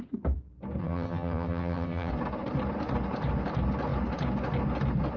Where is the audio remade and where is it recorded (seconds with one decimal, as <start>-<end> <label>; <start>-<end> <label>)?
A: 0.0-0.8 recorded; 0.8-2.1 remade; 2.1-5.2 recorded